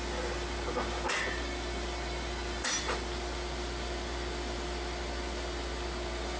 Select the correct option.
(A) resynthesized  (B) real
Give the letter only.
B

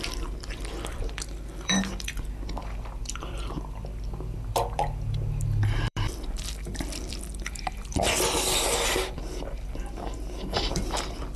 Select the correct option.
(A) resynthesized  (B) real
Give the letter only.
A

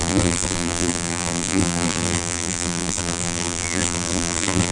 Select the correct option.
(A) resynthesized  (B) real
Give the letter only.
A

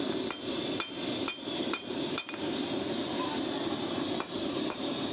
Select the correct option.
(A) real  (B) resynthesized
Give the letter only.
B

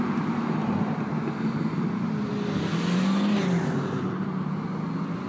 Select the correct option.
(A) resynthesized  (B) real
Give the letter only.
B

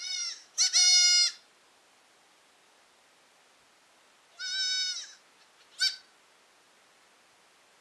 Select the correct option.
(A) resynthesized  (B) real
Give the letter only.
B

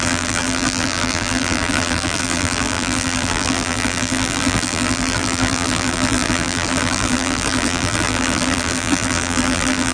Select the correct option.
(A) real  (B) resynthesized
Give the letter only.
B